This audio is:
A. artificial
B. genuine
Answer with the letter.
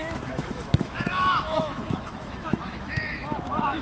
A